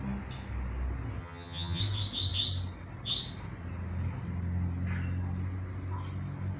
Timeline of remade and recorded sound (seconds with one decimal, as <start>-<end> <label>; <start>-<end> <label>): 0.0-1.2 recorded; 1.2-1.8 remade; 1.8-6.6 recorded